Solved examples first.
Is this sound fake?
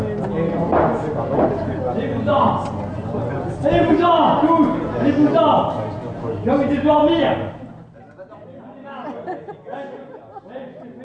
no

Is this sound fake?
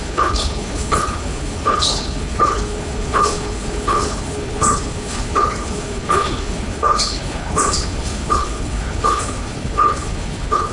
yes